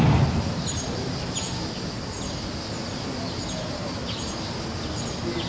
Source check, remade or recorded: recorded